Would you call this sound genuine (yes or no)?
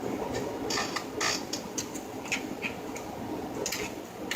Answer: yes